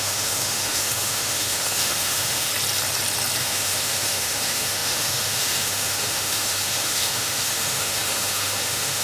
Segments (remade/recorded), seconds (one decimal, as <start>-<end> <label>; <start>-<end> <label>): 0.0-2.5 remade; 2.5-3.4 recorded; 3.4-9.0 remade